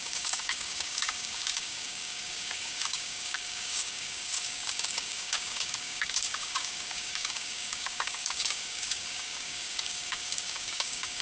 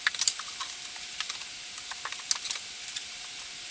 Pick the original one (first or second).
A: second